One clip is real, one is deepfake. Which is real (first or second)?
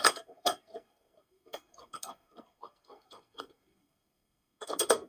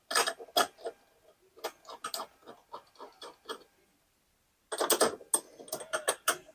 second